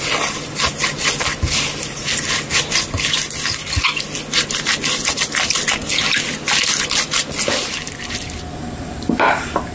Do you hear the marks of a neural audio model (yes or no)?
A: no